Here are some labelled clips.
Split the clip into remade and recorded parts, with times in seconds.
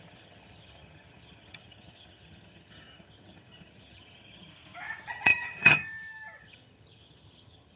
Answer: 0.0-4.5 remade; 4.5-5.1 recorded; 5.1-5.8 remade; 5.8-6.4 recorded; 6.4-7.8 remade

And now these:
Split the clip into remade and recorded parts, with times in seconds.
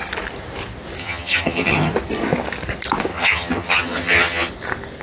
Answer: 0.0-1.0 recorded; 1.0-1.9 remade; 1.9-3.1 recorded; 3.1-4.5 remade; 4.5-5.0 recorded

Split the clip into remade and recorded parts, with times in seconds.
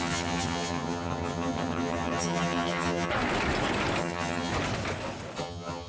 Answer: 0.0-3.1 remade; 3.1-4.0 recorded; 4.0-4.5 remade; 4.5-5.4 recorded; 5.4-5.9 remade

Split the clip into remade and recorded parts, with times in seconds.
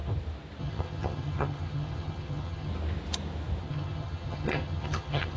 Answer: 0.0-0.6 recorded; 0.6-2.7 remade; 2.7-3.6 recorded; 3.6-5.4 remade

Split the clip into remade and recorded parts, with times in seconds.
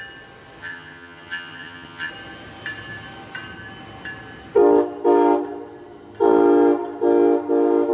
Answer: 0.0-0.6 recorded; 0.6-2.1 remade; 2.1-7.9 recorded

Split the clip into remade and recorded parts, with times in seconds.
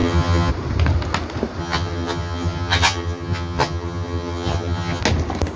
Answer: 0.0-0.5 remade; 0.5-1.6 recorded; 1.6-5.0 remade; 5.0-5.6 recorded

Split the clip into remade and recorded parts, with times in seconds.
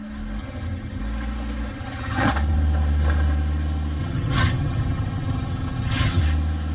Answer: 0.0-0.4 recorded; 0.4-1.0 remade; 1.0-1.7 recorded; 1.7-2.3 remade; 2.3-4.0 recorded; 4.0-6.2 remade; 6.2-6.7 recorded